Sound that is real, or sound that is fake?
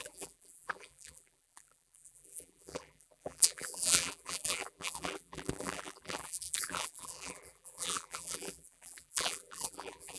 fake